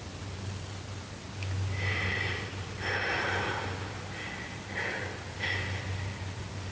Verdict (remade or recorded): recorded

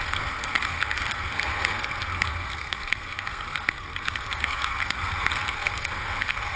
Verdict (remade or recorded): remade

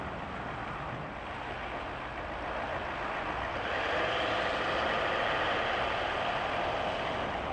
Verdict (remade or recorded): recorded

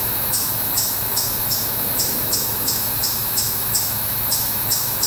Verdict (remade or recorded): remade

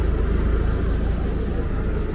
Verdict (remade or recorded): recorded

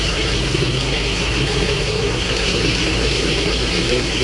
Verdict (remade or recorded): remade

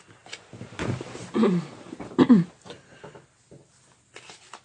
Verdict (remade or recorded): recorded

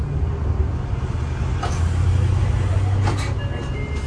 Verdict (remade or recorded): recorded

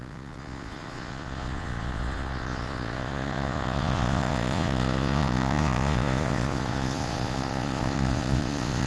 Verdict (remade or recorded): remade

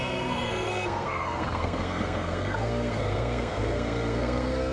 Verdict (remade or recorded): remade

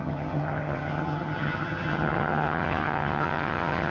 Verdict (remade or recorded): remade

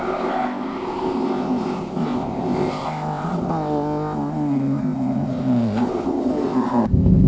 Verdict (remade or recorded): remade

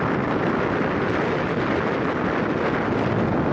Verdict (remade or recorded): recorded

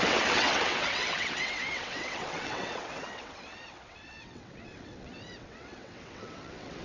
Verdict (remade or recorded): remade